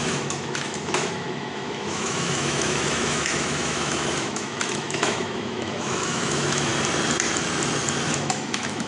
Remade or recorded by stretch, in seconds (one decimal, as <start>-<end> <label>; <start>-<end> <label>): 0.0-6.7 remade; 6.7-8.1 recorded; 8.1-8.9 remade